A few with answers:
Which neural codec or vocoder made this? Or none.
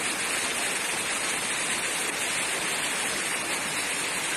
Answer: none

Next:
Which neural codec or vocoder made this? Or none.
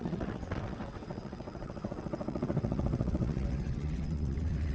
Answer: vocoder, WaveNeXt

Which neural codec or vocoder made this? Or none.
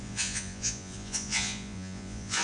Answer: vocoder, Vocos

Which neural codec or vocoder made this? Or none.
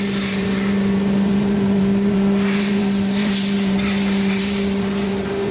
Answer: vocoder, BigVGAN v2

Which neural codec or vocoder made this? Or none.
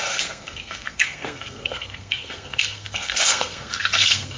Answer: codec, SNAC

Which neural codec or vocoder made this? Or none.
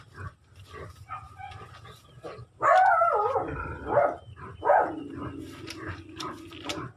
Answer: none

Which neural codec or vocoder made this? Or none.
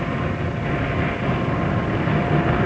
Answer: none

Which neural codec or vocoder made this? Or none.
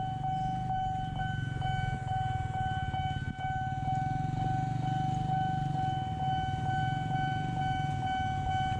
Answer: none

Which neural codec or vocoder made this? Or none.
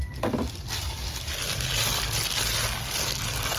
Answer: none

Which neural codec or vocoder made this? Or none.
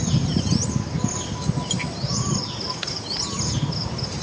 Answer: none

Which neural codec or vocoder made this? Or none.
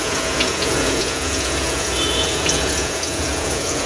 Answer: vocoder, Vocos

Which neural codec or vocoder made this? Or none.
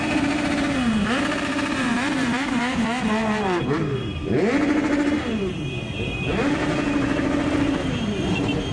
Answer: vocoder, BigVGAN v2